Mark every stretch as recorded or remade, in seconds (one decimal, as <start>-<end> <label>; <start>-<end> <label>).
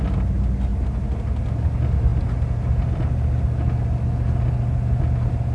0.0-5.5 recorded